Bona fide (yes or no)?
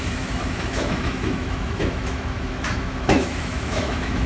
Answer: no